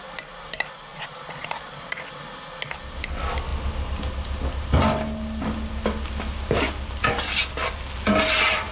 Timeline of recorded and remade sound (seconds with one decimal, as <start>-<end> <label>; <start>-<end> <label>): 0.0-0.9 recorded; 0.9-2.0 remade; 2.0-8.7 recorded